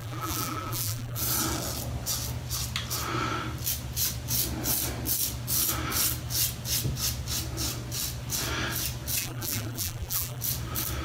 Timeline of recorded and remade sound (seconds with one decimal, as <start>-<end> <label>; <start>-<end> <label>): 0.0-1.2 remade; 1.2-9.2 recorded; 9.2-10.4 remade; 10.4-11.0 recorded

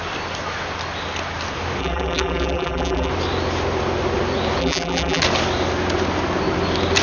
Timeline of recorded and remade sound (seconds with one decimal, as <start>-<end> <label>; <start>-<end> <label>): 0.0-1.8 recorded; 1.8-3.1 remade; 3.1-4.6 recorded; 4.6-5.2 remade; 5.2-7.0 recorded

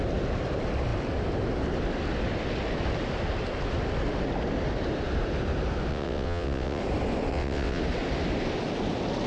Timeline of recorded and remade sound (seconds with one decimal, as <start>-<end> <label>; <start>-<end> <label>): 0.0-5.9 recorded; 5.9-6.8 remade; 6.8-7.3 recorded; 7.3-7.8 remade; 7.8-9.3 recorded

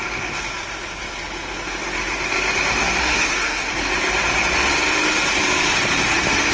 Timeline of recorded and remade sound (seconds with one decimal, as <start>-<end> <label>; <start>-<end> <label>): 0.0-3.0 recorded; 3.0-3.7 remade; 3.7-6.5 recorded

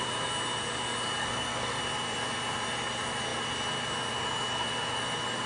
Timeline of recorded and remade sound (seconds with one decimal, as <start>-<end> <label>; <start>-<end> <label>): 0.0-1.2 recorded; 1.2-1.8 remade; 1.8-5.5 recorded